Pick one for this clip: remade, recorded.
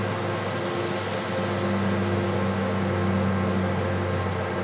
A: recorded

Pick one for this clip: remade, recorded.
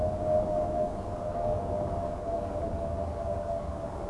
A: remade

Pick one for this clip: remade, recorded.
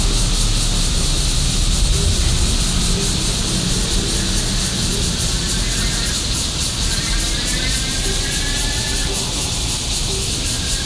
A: recorded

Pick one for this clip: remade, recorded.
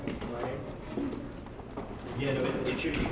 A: recorded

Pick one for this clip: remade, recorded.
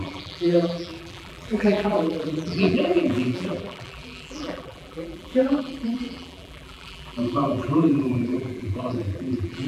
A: remade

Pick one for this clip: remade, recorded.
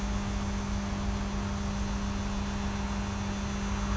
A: recorded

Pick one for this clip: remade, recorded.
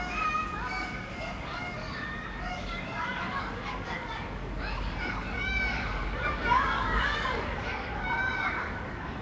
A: remade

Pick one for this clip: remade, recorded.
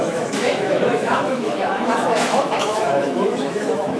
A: remade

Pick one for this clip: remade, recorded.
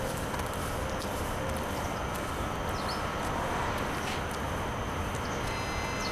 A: recorded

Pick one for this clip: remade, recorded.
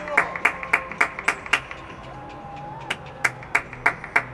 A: recorded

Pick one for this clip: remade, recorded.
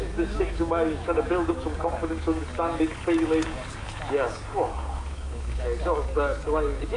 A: remade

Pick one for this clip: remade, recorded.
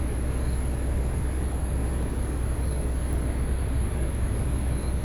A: remade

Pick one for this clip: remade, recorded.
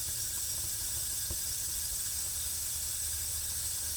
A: recorded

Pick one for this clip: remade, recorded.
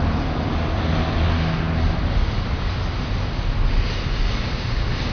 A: recorded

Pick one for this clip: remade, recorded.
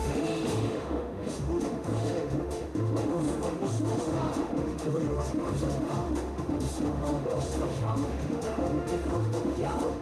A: remade